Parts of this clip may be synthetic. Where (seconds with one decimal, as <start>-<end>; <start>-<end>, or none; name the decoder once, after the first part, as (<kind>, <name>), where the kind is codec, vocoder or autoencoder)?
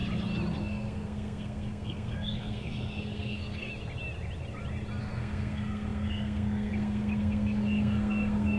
0.6-3.7 (codec, SNAC); 5.0-8.6